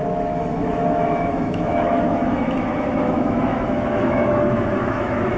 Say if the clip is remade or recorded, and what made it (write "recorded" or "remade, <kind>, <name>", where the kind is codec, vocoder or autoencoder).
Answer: remade, autoencoder, DAC-VAE